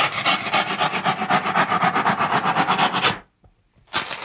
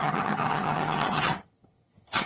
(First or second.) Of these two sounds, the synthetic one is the second